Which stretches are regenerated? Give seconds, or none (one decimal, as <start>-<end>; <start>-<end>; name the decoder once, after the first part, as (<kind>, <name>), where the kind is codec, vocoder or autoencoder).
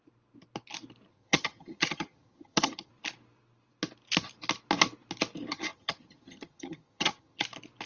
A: 1.1-2.9 (vocoder, HiFi-GAN); 5.5-7.4